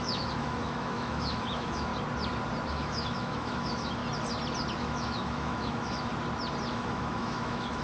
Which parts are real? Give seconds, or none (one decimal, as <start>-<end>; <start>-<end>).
1.9-2.7; 4.0-4.8; 6.1-6.7